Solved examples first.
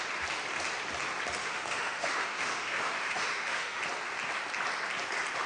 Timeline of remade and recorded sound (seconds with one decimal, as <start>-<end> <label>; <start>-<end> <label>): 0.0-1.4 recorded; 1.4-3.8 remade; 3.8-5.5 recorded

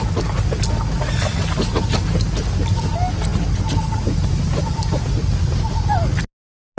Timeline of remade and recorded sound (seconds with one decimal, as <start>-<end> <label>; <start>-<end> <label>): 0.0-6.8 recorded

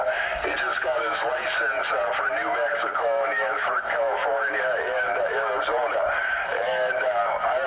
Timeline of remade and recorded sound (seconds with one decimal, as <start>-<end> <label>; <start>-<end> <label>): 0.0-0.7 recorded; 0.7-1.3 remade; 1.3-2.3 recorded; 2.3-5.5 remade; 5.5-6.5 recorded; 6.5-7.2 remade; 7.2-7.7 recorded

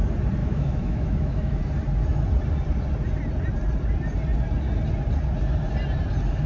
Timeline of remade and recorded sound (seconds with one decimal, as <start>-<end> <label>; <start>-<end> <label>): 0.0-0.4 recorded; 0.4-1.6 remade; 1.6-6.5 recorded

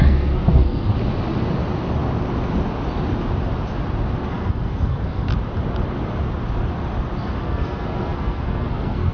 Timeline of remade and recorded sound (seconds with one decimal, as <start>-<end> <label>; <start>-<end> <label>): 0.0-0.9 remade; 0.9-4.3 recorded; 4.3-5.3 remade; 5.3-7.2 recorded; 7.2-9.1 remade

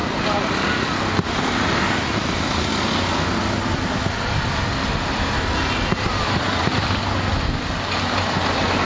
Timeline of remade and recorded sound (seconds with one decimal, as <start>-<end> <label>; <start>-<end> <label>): 0.0-8.8 recorded

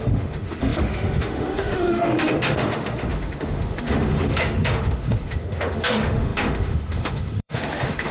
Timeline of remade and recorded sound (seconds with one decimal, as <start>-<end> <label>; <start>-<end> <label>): 0.0-8.1 remade